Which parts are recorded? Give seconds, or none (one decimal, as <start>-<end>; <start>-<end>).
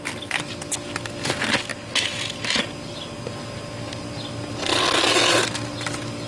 0.0-6.3